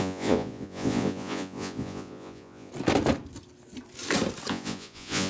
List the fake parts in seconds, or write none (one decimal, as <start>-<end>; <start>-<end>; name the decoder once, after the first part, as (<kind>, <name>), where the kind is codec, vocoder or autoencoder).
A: 0.0-2.7 (vocoder, Vocos); 4.5-5.3